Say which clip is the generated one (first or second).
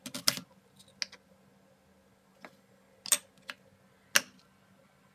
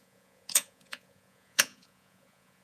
second